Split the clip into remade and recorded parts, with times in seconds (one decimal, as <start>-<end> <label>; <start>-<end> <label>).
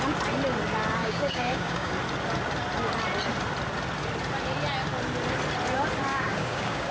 0.0-1.0 recorded; 1.0-1.9 remade; 1.9-6.1 recorded; 6.1-6.9 remade